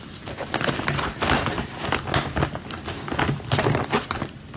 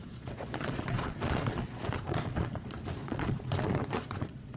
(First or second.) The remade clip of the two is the second